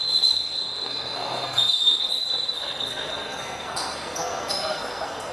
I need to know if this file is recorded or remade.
remade